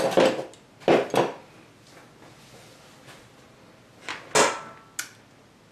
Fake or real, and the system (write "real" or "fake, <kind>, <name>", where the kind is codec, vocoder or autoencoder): real